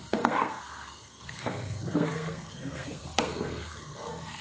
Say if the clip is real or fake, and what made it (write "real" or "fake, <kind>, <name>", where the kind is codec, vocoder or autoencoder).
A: fake, codec, SNAC